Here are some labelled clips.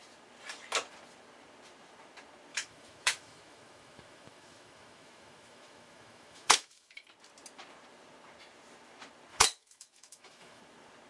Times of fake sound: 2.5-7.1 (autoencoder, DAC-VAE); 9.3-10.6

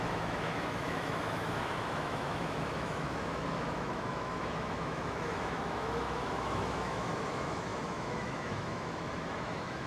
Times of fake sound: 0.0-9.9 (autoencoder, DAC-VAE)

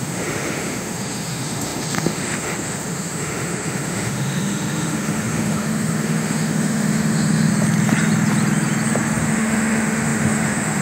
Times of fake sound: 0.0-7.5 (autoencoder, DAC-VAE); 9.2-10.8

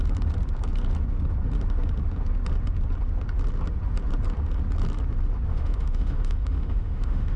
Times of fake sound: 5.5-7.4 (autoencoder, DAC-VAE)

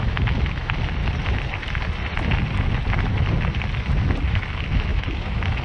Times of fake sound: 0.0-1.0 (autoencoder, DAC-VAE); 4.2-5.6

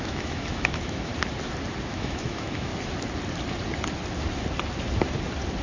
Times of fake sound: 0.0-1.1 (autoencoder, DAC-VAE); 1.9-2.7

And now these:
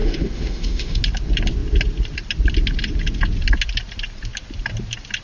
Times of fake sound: 0.0-1.0 (autoencoder, DAC-VAE)